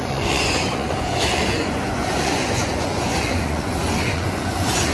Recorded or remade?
remade